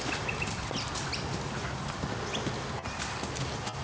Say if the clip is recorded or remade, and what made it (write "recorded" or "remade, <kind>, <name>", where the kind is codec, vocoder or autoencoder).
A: recorded